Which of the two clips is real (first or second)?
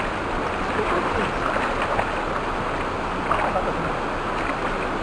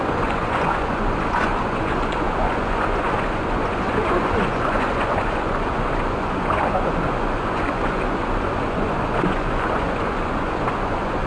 first